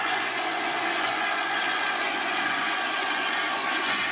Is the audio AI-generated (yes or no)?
yes